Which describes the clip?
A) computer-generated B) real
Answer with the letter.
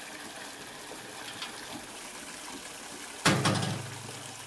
B